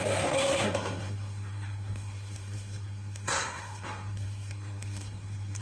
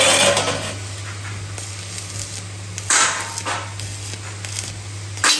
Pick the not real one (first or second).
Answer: first